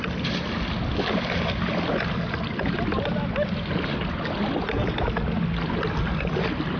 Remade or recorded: recorded